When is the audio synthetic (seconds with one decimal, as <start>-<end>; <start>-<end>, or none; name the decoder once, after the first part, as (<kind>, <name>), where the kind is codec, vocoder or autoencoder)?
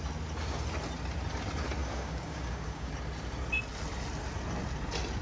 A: 1.8-2.9 (codec, DAC)